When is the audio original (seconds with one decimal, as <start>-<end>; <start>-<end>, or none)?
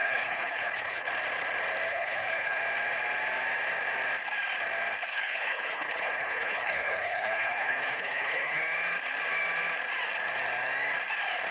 1.1-1.9; 2.6-5.1; 8.6-11.5